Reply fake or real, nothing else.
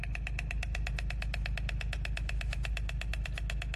real